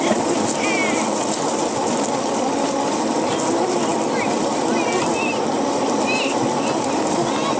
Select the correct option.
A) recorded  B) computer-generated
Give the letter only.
A